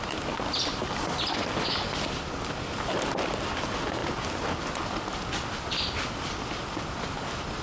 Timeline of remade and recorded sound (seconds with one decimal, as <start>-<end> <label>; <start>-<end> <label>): 0.0-7.6 recorded